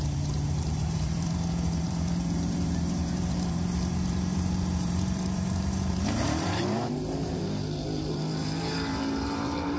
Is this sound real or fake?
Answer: fake